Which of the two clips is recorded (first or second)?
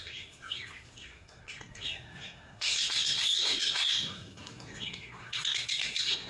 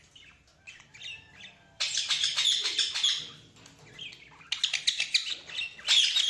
second